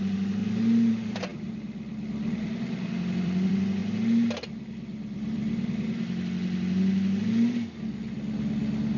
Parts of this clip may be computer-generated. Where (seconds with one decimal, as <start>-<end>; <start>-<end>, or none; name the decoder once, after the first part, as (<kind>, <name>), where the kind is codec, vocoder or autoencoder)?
0.0-0.4 (vocoder, BigVGAN v2); 0.9-1.3; 2.4-3.8; 4.7-5.4